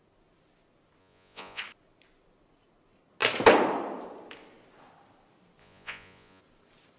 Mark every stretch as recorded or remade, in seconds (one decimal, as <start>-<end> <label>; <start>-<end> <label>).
0.0-1.0 recorded; 1.0-1.6 remade; 1.6-5.6 recorded; 5.6-6.4 remade; 6.4-7.0 recorded